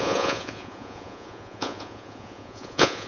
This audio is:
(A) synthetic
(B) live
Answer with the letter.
A